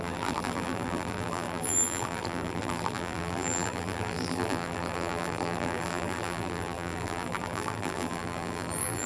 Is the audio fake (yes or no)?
yes